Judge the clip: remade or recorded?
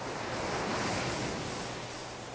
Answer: recorded